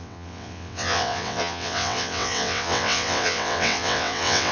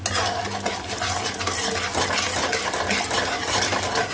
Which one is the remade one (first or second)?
first